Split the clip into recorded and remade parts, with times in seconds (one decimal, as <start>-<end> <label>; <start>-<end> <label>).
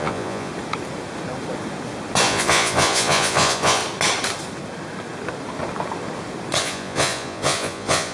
0.0-0.5 remade; 0.5-2.2 recorded; 2.2-3.8 remade; 3.8-6.6 recorded; 6.6-8.1 remade